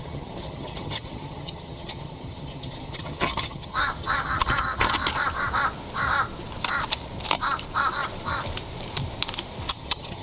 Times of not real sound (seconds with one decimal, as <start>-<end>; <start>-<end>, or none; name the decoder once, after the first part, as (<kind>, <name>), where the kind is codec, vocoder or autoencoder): 0.0-5.0 (vocoder, HiFi-GAN); 9.7-10.2